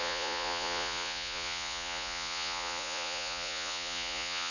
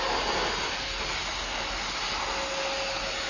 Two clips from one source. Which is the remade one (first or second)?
first